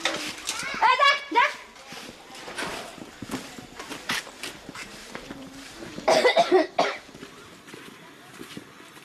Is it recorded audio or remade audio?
remade